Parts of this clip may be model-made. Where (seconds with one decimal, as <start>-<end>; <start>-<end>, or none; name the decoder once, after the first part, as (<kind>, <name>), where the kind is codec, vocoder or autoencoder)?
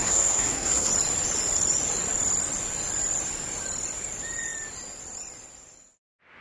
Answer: 0.0-0.9 (codec, SNAC)